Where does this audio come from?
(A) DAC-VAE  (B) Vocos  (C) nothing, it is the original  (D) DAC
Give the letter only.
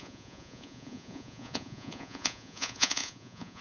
B